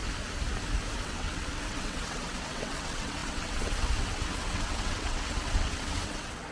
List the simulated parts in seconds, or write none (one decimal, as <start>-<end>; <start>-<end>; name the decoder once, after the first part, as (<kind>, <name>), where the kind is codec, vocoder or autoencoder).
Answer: 1.0-6.5 (vocoder, WaveNeXt)